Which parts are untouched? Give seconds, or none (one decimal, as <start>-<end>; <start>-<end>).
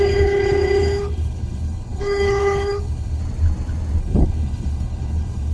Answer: 3.2-4.0